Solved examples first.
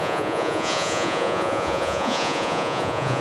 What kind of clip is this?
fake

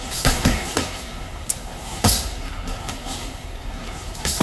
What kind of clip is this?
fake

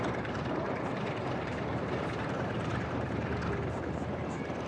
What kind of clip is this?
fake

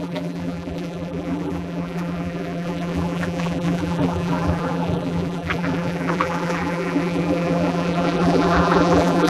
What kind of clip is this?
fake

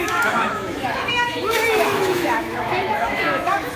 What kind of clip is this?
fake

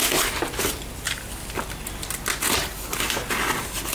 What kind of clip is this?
real